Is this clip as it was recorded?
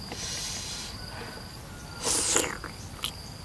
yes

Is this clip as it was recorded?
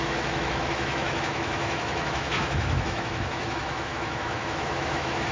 no